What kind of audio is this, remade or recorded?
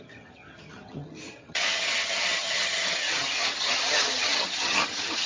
remade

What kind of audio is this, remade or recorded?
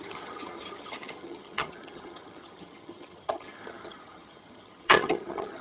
remade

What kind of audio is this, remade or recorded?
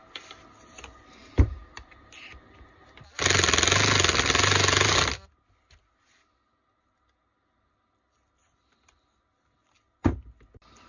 recorded